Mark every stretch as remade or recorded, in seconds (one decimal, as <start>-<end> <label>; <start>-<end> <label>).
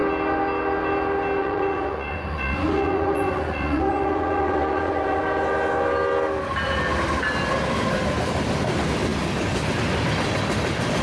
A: 0.0-1.4 recorded; 1.4-5.2 remade; 5.2-11.0 recorded